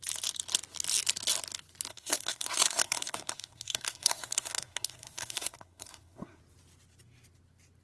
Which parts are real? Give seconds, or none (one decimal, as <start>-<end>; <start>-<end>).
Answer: 0.0-1.9; 6.4-7.8